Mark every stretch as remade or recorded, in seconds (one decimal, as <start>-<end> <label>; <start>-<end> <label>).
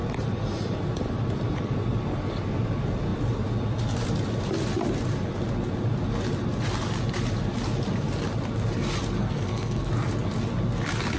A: 0.0-9.2 recorded; 9.2-9.9 remade; 9.9-11.2 recorded